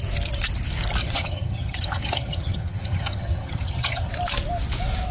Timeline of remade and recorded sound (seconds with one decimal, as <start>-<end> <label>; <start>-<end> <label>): 0.0-1.0 recorded; 1.0-4.1 remade; 4.1-5.1 recorded